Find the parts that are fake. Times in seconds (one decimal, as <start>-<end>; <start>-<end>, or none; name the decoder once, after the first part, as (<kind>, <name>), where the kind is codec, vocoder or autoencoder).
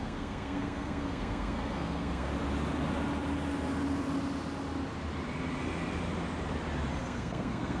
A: 0.0-2.3 (codec, SNAC); 7.0-7.8